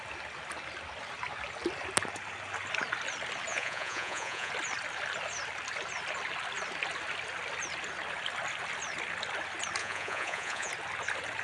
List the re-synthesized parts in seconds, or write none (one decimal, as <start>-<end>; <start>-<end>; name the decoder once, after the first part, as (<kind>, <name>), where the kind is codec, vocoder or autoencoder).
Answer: 3.5-4.5 (vocoder, Vocos); 9.8-10.7